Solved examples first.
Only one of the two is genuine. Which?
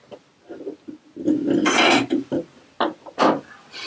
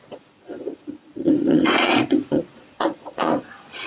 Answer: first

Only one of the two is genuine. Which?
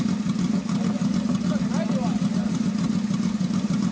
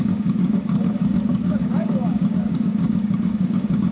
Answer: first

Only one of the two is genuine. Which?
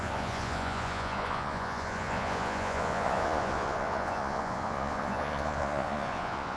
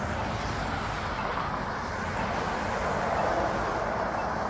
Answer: second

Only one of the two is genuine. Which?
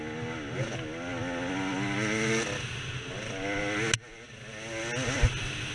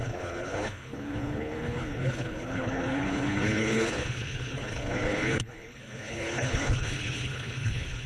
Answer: first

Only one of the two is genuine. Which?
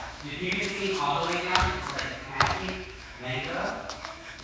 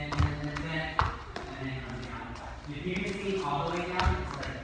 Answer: second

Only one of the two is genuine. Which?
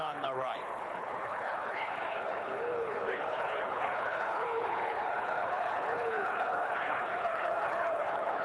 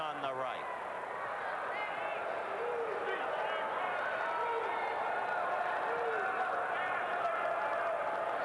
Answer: second